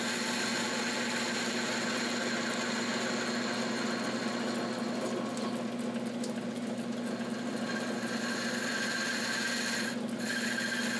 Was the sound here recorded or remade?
recorded